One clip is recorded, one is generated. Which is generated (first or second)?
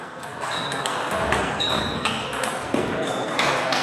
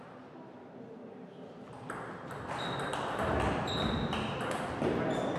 first